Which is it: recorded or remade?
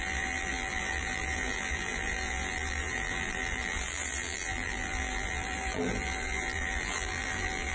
remade